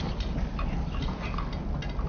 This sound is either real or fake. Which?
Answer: real